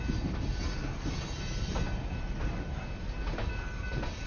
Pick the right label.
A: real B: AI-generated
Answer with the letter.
A